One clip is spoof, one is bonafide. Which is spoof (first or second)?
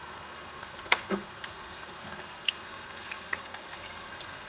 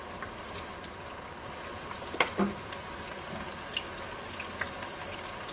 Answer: first